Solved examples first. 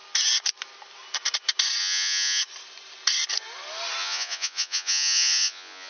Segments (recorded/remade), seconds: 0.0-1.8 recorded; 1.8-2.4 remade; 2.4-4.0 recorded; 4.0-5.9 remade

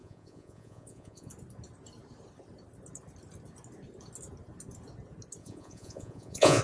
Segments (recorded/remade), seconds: 0.0-1.3 remade; 1.3-5.4 recorded; 5.4-6.6 remade

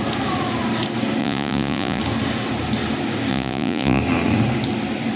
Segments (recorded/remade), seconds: 0.0-1.2 recorded; 1.2-2.0 remade; 2.0-3.3 recorded; 3.3-4.0 remade; 4.0-5.2 recorded

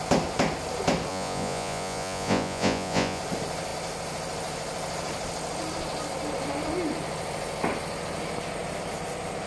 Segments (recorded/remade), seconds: 0.0-1.1 recorded; 1.1-3.2 remade; 3.2-9.5 recorded

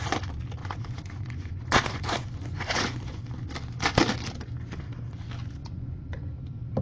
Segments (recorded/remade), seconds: 0.0-0.6 recorded; 0.6-3.2 remade; 3.2-5.6 recorded; 5.6-6.3 remade; 6.3-6.8 recorded

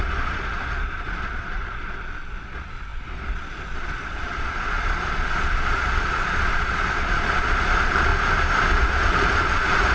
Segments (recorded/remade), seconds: 0.0-8.1 remade; 8.1-8.7 recorded; 8.7-9.9 remade